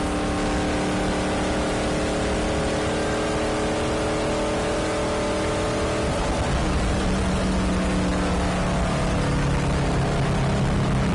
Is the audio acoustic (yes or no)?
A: yes